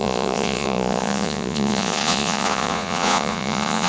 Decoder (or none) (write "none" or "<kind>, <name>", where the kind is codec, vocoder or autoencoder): vocoder, Vocos